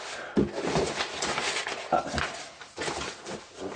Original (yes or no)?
yes